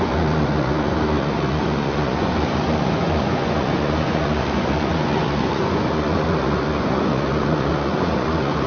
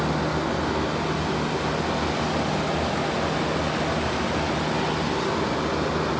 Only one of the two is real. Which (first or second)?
second